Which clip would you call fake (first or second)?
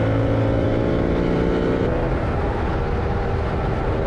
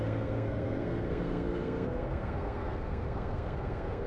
second